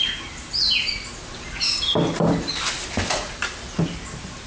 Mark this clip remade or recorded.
recorded